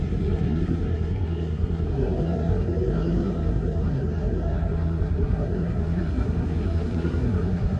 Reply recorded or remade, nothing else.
remade